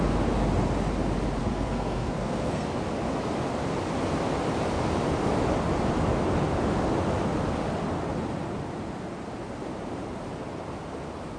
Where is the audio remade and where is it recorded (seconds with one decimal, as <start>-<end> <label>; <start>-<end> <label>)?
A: 0.0-1.4 recorded; 1.4-2.7 remade; 2.7-11.4 recorded